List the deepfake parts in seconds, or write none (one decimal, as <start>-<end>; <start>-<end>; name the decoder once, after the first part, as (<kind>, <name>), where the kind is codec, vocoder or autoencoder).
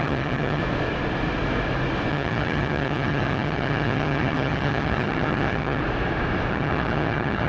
0.0-0.6 (vocoder, HiFi-GAN); 2.1-5.8; 6.5-7.5